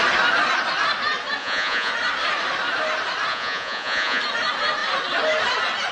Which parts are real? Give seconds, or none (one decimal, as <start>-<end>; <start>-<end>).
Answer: 0.0-1.4; 1.9-3.3; 4.2-5.9